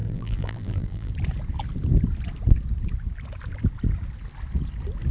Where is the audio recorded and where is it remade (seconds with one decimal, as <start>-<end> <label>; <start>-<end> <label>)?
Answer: 0.0-1.1 remade; 1.1-5.1 recorded